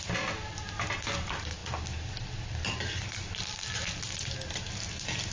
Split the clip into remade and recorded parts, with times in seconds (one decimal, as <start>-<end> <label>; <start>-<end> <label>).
0.0-5.3 recorded